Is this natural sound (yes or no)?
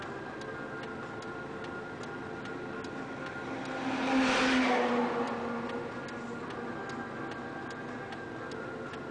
yes